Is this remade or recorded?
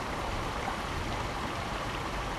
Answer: remade